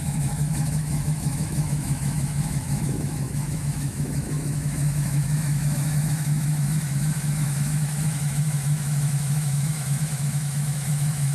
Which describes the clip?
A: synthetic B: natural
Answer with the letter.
A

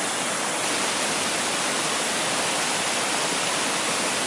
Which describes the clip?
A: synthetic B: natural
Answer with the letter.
B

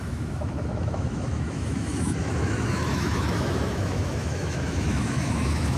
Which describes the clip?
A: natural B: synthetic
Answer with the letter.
B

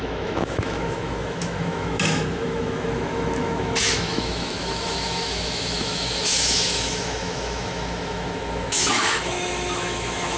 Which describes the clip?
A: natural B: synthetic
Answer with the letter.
B